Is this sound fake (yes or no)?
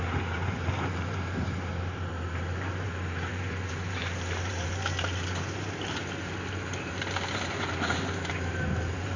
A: yes